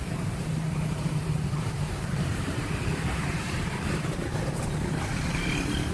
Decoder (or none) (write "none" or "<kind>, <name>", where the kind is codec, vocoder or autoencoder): vocoder, BigVGAN v2